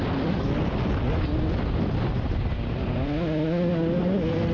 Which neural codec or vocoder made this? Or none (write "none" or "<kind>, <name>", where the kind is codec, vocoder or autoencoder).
none